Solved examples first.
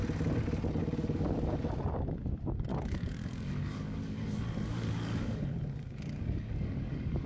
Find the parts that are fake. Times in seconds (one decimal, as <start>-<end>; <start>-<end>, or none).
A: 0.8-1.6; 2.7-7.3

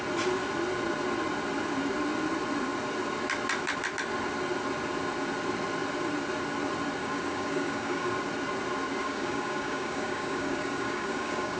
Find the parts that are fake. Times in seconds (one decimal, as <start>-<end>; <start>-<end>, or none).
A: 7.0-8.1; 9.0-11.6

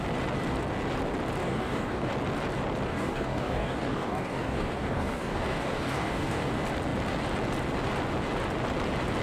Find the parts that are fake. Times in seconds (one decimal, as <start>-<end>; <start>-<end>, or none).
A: 1.4-2.1; 2.9-6.5